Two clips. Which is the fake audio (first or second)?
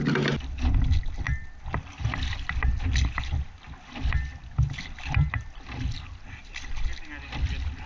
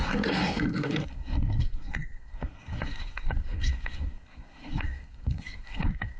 second